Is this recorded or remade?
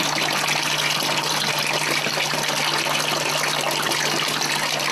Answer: recorded